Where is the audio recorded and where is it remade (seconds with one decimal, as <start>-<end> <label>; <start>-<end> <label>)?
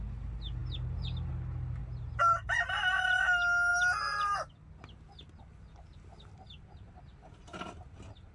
0.0-8.3 recorded